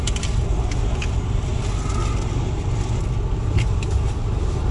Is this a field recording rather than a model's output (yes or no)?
yes